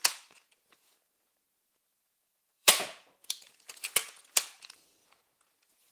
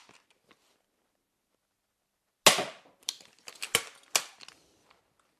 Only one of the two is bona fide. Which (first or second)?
second